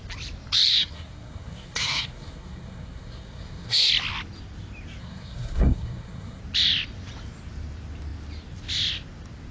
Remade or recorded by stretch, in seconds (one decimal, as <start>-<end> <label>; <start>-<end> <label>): 0.0-0.7 recorded; 0.7-3.9 remade; 3.9-5.0 recorded; 5.0-6.4 remade; 6.4-9.5 recorded

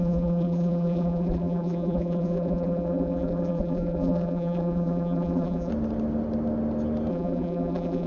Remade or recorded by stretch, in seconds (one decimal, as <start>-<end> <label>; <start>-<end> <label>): 0.0-5.7 remade; 5.7-7.1 recorded; 7.1-8.1 remade

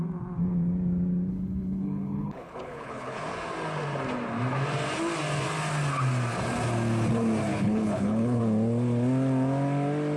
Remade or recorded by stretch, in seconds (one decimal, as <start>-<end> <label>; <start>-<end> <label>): 0.0-1.3 recorded; 1.3-3.2 remade; 3.2-7.5 recorded; 7.5-8.4 remade; 8.4-10.2 recorded

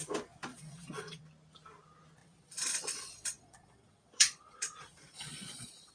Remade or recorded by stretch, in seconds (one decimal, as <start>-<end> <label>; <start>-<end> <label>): 0.0-0.5 recorded; 0.5-1.2 remade; 1.2-2.2 recorded; 2.2-5.9 remade

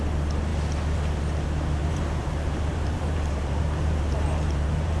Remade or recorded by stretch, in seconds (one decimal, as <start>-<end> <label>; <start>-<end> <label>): 0.0-1.8 recorded; 1.8-5.0 remade

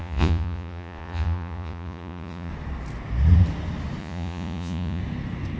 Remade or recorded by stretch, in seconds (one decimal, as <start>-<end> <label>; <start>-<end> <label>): 0.0-2.5 remade; 2.5-4.0 recorded; 4.0-5.0 remade; 5.0-5.6 recorded

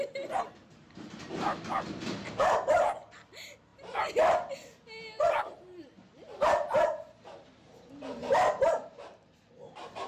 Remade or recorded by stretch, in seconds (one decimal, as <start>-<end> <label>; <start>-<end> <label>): 0.0-3.7 remade; 3.7-5.2 recorded; 5.2-8.2 remade; 8.2-8.7 recorded; 8.7-10.1 remade

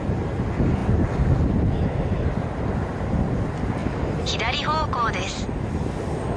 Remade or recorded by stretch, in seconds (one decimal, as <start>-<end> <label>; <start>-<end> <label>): 0.0-3.8 recorded; 3.8-5.4 remade; 5.4-6.4 recorded